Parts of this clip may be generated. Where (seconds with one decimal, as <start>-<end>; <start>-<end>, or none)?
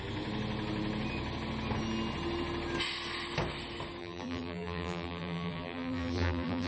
4.0-6.7